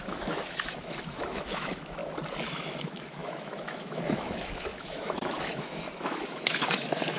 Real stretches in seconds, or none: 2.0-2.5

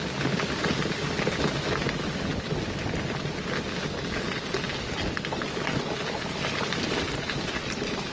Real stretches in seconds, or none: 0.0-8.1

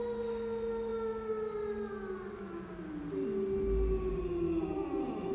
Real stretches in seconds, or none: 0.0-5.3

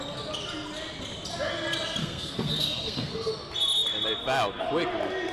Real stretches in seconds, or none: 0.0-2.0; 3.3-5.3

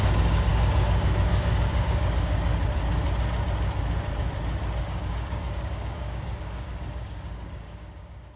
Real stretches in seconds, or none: 2.5-4.8

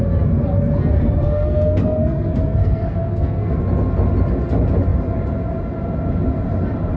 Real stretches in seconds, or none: 0.0-1.2; 3.6-7.0